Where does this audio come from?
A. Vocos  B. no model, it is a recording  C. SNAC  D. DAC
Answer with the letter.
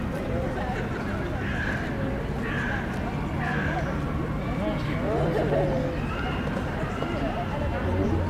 B